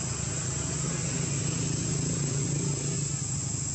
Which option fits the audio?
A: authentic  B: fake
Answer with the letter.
A